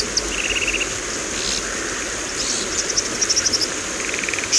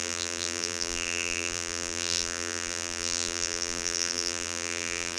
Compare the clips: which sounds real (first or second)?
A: first